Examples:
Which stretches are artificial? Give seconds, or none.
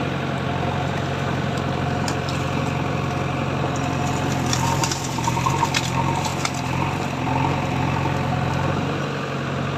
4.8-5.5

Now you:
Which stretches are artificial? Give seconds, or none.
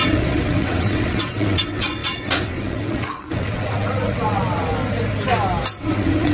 0.0-4.7; 5.8-6.3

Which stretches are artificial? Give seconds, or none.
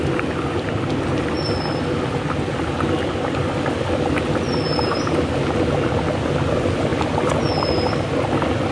none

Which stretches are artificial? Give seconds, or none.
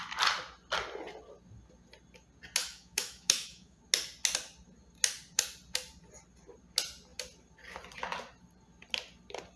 2.6-3.8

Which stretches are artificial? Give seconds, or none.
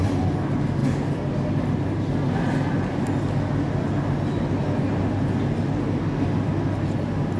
none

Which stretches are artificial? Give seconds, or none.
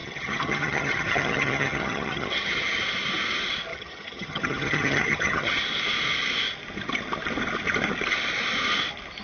0.0-2.8; 3.7-5.6